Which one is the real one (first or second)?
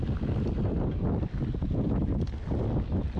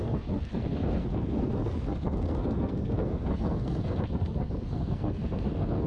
first